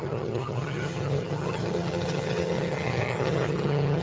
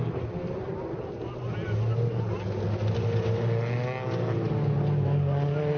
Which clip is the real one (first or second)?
second